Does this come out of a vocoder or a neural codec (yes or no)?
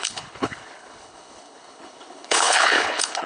yes